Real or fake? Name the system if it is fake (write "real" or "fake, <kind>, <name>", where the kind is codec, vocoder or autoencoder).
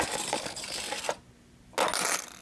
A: real